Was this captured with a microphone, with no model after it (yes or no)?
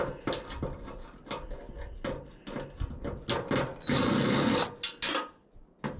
yes